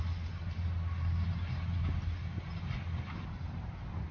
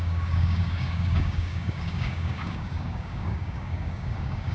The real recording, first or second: first